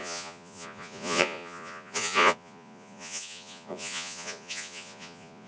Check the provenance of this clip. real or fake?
fake